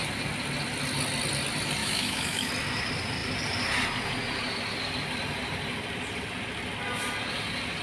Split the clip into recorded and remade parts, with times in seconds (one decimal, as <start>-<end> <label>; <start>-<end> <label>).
0.0-1.8 recorded; 1.8-2.5 remade; 2.5-7.8 recorded